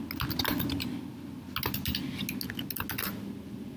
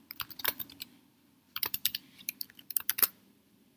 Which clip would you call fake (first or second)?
second